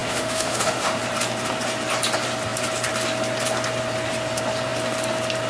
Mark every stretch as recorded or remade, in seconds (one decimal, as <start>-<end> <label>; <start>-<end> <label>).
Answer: 0.0-1.0 remade; 1.0-5.5 recorded